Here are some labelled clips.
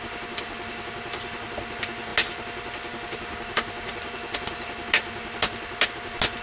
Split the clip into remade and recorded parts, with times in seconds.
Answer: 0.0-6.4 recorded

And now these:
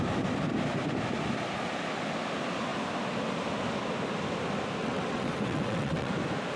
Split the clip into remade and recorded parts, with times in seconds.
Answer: 0.0-4.8 recorded; 4.8-6.1 remade; 6.1-6.6 recorded

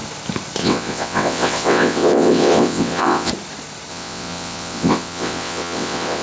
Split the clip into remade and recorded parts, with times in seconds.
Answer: 0.0-0.6 recorded; 0.6-3.3 remade; 3.3-3.9 recorded; 3.9-6.2 remade

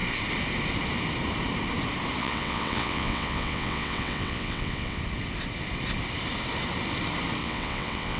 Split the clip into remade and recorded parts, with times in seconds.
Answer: 0.0-2.2 recorded; 2.2-5.0 remade; 5.0-7.4 recorded; 7.4-8.2 remade